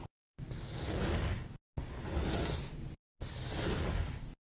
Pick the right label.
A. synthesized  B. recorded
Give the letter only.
B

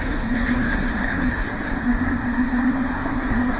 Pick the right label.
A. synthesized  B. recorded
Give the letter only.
A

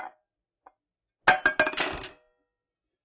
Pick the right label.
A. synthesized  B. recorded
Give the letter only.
B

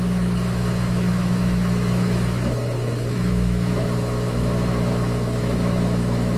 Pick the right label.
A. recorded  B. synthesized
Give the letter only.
B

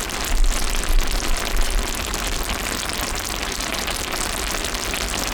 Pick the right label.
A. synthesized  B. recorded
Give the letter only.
B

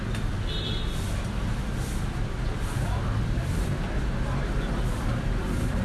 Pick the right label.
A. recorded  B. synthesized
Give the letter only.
A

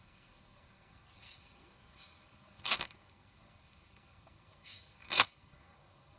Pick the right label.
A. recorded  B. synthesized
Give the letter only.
B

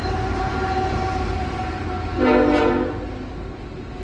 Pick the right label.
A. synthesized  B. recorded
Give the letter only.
B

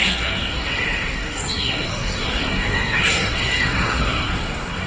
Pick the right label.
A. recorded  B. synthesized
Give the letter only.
B